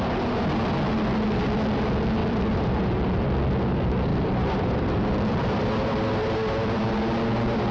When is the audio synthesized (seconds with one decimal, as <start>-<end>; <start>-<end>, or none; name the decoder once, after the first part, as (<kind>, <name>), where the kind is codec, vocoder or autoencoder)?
2.2-2.8 (vocoder, BigVGAN v2); 4.1-6.9